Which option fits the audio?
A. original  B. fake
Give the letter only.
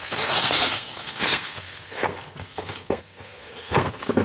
B